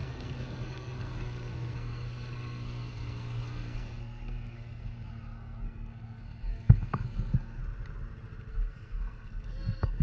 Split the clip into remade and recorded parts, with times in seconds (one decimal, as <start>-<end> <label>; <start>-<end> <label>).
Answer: 0.0-7.6 remade; 7.6-8.5 recorded; 8.5-10.0 remade